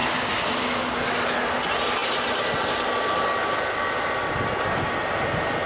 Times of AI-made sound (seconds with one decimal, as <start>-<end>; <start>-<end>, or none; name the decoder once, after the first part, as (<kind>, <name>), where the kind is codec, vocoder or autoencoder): 0.0-0.6 (codec, DAC)